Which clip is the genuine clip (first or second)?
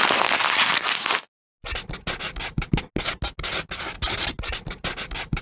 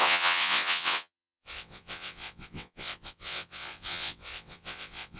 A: first